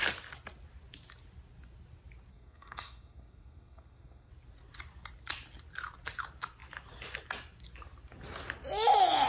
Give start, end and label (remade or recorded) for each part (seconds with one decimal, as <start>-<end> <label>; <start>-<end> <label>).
0.0-2.3 recorded; 2.3-4.3 remade; 4.3-9.3 recorded